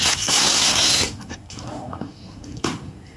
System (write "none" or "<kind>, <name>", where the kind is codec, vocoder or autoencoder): codec, SNAC